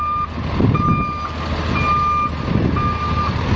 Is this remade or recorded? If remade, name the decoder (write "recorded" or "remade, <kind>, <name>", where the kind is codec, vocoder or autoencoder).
recorded